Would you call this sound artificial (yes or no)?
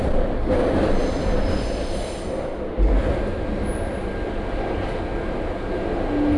no